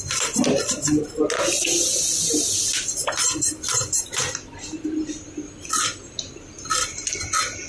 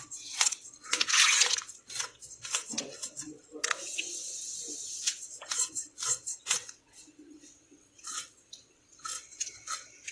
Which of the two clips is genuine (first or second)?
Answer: first